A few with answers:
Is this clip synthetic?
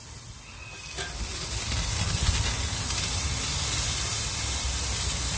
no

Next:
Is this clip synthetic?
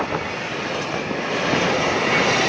no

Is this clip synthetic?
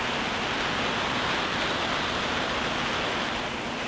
no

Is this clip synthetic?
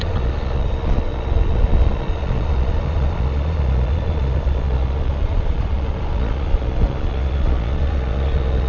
yes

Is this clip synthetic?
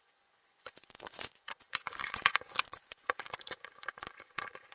yes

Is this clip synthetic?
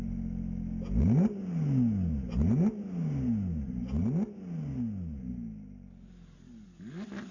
no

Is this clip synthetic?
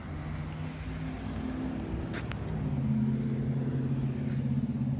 no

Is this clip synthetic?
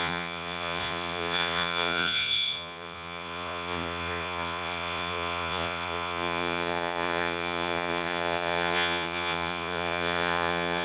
yes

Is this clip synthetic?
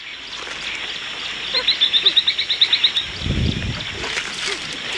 no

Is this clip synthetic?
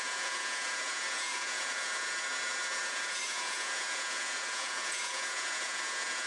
yes